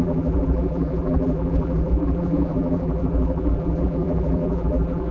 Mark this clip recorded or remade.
remade